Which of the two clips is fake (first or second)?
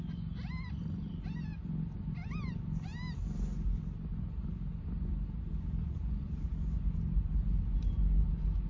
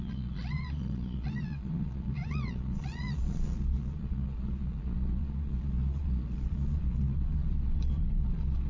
second